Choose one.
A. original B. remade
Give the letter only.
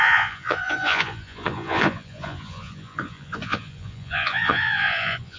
B